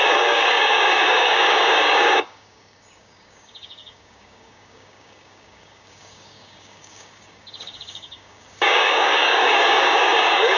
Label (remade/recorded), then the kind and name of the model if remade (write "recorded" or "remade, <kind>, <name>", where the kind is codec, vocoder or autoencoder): remade, codec, DAC